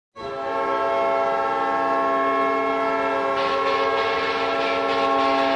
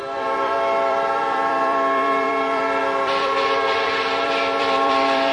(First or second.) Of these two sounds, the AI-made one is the second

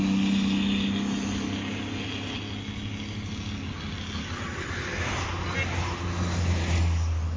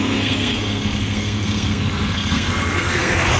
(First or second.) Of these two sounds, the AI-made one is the second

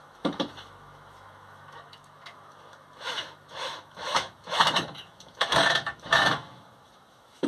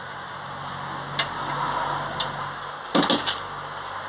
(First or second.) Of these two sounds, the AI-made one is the first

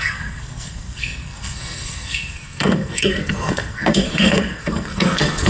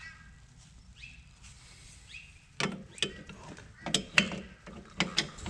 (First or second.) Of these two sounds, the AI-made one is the first